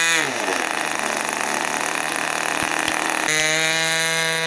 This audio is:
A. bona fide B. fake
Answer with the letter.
A